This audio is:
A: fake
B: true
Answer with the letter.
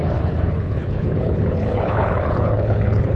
A